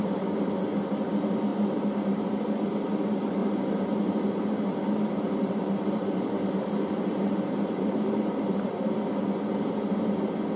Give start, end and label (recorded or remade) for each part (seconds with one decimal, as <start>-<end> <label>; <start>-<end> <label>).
0.0-1.5 recorded; 1.5-2.3 remade; 2.3-3.4 recorded; 3.4-8.5 remade; 8.5-10.6 recorded